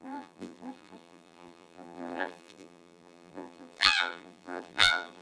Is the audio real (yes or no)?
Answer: no